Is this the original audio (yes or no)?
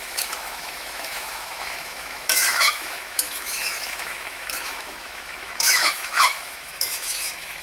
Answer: no